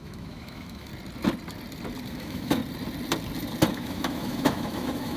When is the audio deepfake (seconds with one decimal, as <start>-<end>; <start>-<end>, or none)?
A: 0.0-0.9; 2.1-2.6; 3.7-5.2